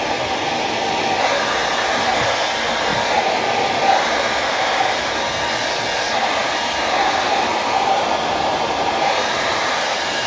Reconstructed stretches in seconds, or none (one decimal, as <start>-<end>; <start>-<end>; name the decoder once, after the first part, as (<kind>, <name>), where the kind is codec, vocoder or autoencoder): 2.9-5.2 (vocoder, BigVGAN v2); 6.4-10.3